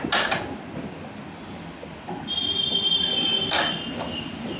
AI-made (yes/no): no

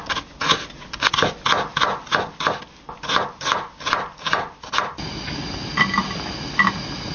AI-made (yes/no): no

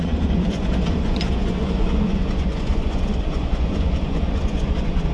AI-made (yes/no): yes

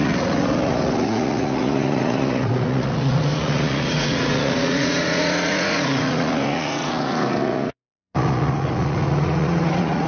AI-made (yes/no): yes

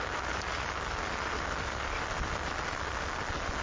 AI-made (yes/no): no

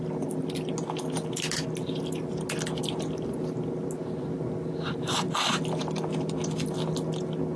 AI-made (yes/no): no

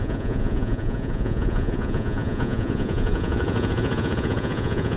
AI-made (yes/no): yes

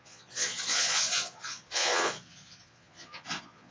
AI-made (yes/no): yes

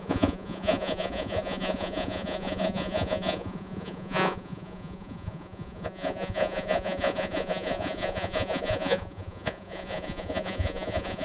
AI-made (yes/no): yes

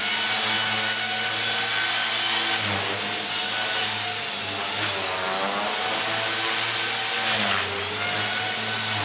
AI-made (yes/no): no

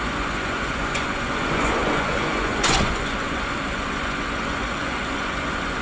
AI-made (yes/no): yes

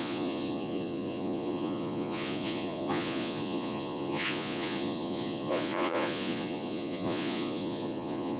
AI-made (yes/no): yes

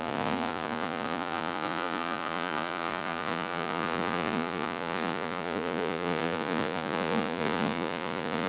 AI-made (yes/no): yes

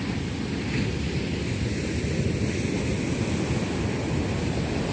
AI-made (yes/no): no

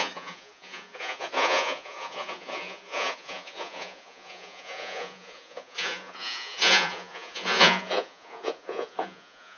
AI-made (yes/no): yes